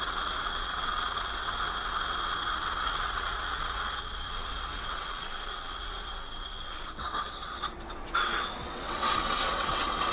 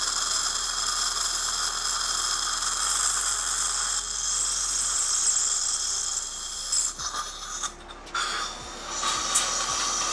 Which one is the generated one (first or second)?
first